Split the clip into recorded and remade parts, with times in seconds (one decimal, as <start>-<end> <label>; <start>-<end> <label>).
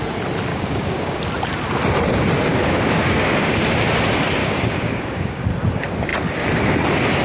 0.0-0.5 recorded; 0.5-1.2 remade; 1.2-2.5 recorded; 2.5-3.6 remade; 3.6-4.4 recorded; 4.4-5.5 remade; 5.5-7.2 recorded